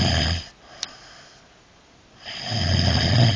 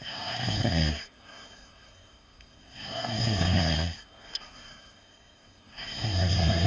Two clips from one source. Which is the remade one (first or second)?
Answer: second